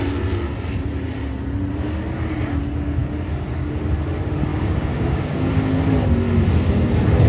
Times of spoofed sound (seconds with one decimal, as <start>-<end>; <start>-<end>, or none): 4.5-5.5